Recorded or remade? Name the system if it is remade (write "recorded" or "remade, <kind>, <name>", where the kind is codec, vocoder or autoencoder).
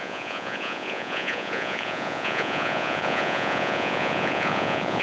remade, vocoder, Vocos